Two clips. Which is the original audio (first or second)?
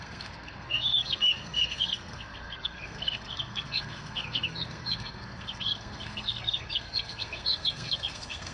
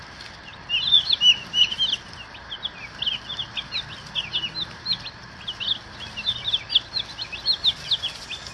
second